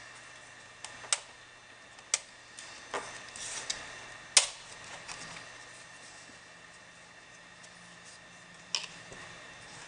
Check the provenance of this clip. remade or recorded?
recorded